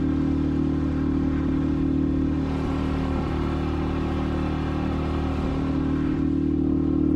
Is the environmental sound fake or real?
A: real